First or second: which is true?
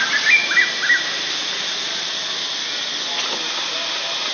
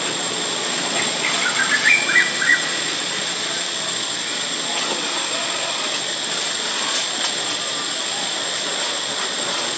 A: first